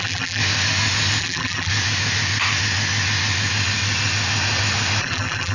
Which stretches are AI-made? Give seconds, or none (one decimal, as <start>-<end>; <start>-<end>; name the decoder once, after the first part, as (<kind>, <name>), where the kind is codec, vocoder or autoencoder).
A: 0.0-0.4 (vocoder, BigVGAN v2); 1.2-1.7; 5.0-5.5